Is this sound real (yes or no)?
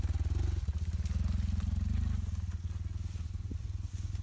yes